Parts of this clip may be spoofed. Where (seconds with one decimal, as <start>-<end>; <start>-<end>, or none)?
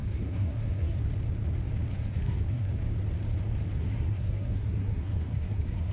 0.0-1.0; 1.9-2.7; 3.8-5.9